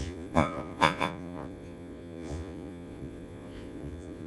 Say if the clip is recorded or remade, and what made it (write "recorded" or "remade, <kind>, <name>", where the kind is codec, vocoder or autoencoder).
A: remade, vocoder, Vocos